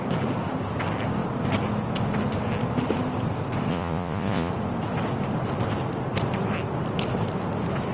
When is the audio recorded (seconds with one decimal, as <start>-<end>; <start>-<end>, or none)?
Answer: 0.0-3.7; 4.5-7.9